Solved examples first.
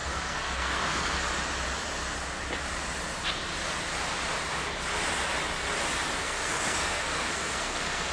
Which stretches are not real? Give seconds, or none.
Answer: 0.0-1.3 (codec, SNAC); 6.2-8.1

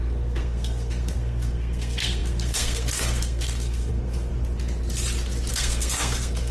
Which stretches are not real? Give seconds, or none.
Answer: 0.0-4.3 (codec, SNAC); 5.5-6.5

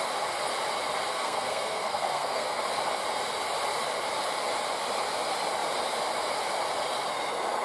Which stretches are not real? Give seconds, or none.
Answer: 1.1-2.6 (codec, SNAC)

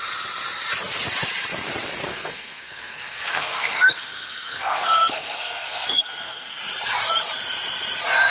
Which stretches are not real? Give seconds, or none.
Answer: 2.1-6.6 (codec, SNAC)

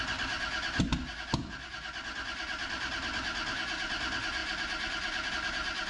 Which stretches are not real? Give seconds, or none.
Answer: none